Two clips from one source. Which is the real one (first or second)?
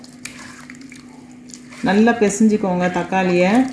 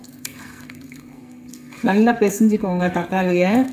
first